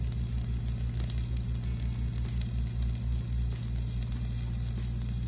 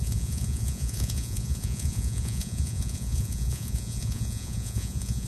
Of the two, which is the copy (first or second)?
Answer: second